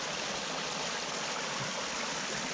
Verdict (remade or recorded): recorded